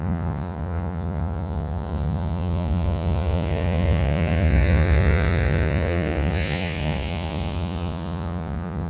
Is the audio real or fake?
fake